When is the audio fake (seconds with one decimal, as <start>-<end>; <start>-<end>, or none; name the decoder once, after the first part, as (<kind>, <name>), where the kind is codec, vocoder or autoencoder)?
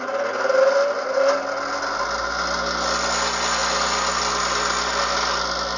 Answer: none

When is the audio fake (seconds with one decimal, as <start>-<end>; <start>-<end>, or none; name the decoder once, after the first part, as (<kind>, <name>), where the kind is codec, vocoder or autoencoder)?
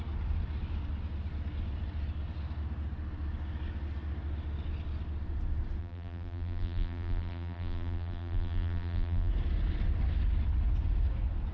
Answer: 5.8-9.3 (vocoder, BigVGAN v2)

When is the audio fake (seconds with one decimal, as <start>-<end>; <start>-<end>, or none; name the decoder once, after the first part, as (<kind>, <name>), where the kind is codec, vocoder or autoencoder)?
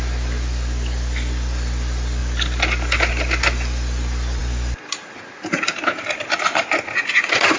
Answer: none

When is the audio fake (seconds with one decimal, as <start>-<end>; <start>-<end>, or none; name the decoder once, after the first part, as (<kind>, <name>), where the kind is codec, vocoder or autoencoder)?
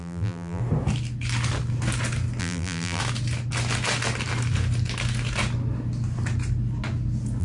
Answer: 0.0-0.6 (vocoder, BigVGAN v2); 2.4-3.0